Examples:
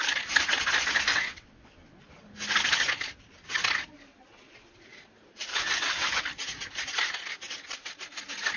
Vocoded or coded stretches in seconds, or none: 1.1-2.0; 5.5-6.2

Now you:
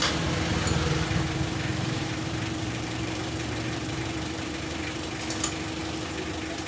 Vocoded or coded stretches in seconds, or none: 1.7-5.1

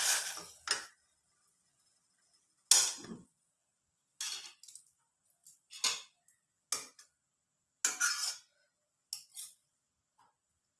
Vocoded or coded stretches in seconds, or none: none

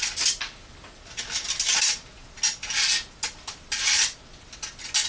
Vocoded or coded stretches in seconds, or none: none

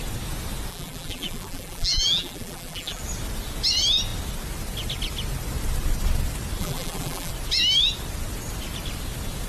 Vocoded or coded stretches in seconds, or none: 0.7-3.0; 6.6-7.3